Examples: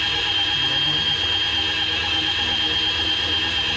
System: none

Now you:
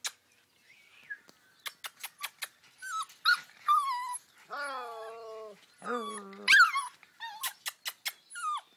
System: none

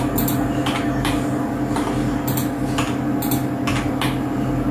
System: none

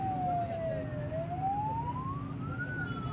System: none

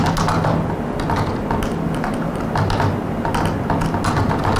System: none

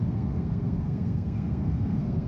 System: codec, SNAC